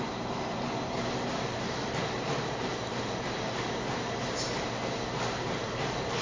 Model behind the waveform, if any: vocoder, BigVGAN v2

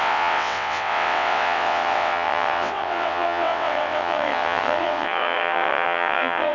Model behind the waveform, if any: vocoder, WaveNeXt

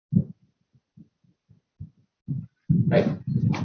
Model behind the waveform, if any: none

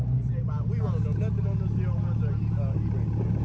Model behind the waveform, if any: none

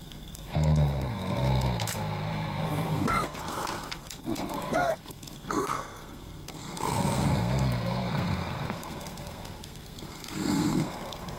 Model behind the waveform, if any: codec, SNAC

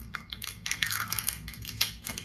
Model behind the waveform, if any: codec, SNAC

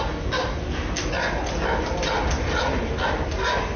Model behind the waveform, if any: none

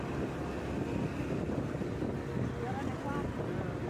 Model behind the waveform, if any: none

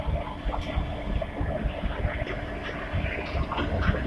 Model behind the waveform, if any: none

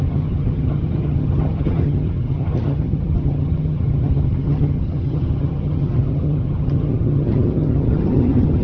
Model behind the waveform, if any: vocoder, HiFi-GAN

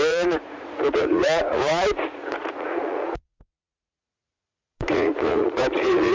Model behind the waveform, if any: vocoder, Vocos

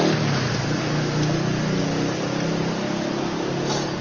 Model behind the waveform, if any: none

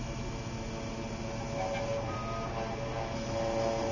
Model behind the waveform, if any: none